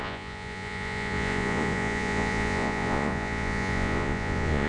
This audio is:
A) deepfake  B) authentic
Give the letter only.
A